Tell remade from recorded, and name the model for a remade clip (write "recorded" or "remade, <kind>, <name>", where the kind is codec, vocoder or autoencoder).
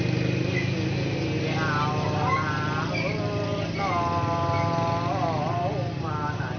recorded